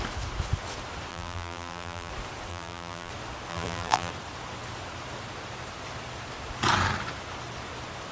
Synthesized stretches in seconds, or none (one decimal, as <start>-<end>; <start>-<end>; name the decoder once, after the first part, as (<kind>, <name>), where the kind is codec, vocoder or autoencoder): 1.1-2.1 (vocoder, BigVGAN v2); 2.5-3.1; 3.5-4.1